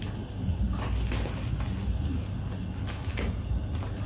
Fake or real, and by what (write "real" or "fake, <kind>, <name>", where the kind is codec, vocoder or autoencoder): real